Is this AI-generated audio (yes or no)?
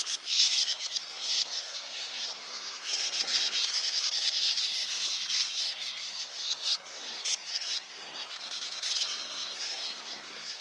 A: yes